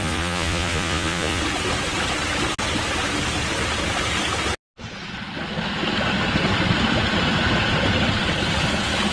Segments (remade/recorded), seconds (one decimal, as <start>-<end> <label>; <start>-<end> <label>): 0.0-1.4 remade; 1.4-9.1 recorded